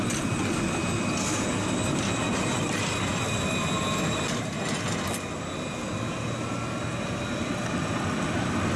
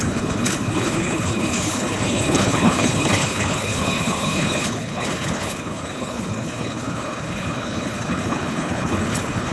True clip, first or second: first